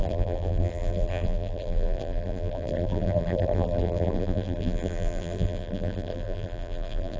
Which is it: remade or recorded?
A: remade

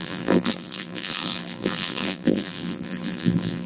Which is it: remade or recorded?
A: remade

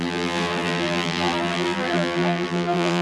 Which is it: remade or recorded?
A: remade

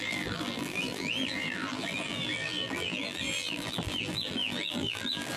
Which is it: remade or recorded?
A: remade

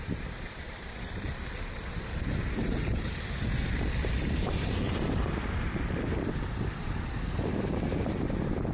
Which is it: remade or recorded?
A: remade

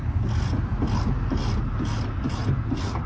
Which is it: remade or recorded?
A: recorded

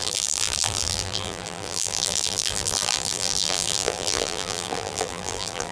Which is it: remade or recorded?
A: remade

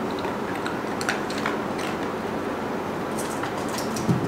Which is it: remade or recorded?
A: recorded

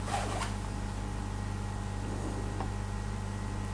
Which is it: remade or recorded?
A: recorded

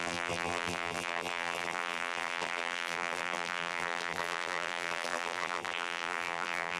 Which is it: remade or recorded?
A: remade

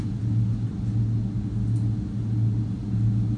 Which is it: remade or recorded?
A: recorded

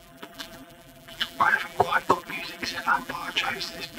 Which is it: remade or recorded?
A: remade